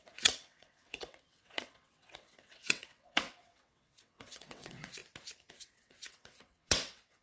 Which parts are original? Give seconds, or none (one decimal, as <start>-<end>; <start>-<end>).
5.0-5.5